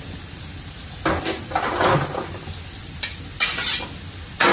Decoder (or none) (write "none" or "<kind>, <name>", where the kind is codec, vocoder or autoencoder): none